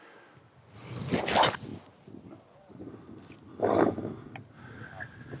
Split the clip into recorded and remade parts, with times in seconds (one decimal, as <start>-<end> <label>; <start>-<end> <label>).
0.0-5.4 recorded

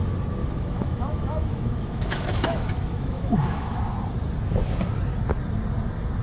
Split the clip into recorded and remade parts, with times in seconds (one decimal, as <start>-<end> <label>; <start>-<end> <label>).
0.0-0.4 recorded; 0.4-3.8 remade; 3.8-6.2 recorded

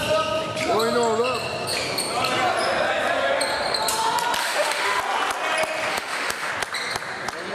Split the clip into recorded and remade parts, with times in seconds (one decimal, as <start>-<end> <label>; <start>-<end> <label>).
0.0-4.4 recorded; 4.4-5.0 remade; 5.0-5.9 recorded; 5.9-6.5 remade; 6.5-7.5 recorded

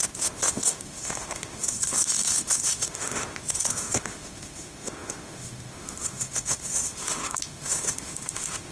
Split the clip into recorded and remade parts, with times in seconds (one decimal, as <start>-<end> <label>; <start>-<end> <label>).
0.0-8.7 remade

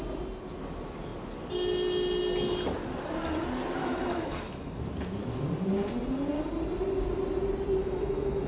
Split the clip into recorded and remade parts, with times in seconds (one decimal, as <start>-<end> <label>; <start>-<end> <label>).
0.0-3.8 recorded; 3.8-4.8 remade; 4.8-7.8 recorded; 7.8-8.5 remade

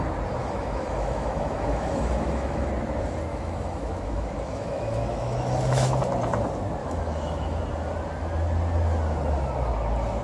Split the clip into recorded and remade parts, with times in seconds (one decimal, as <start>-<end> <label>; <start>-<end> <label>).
0.0-0.4 recorded; 0.4-2.7 remade; 2.7-3.3 recorded; 3.3-6.0 remade; 6.0-6.8 recorded; 6.8-7.6 remade; 7.6-10.2 recorded